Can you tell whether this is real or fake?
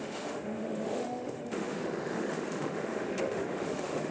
fake